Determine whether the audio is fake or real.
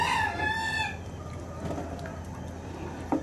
real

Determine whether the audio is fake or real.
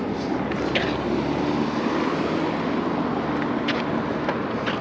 real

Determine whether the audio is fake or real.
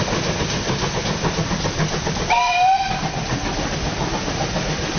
real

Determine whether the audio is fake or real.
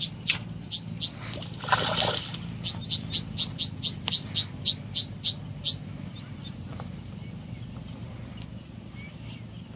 real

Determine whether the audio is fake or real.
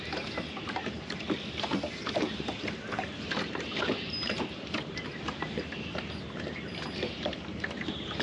fake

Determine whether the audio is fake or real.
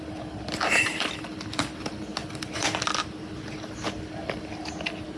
real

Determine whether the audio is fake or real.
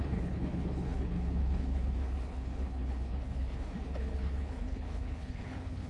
fake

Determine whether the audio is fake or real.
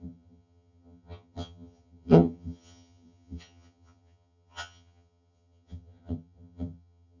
fake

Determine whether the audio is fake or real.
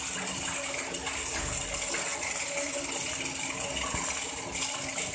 real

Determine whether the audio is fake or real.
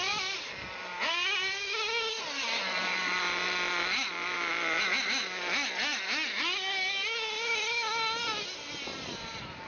real